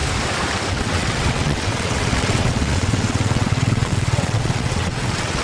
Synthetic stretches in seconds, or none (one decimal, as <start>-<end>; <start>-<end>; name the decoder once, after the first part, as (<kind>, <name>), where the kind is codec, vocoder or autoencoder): 0.7-5.4 (vocoder, WaveNeXt)